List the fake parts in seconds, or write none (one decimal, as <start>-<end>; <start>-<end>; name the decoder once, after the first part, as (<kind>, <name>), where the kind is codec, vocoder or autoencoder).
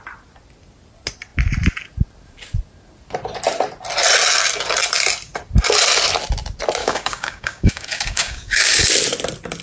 6.8-8.9 (codec, DAC)